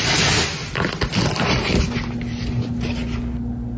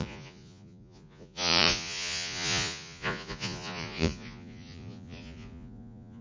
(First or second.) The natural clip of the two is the first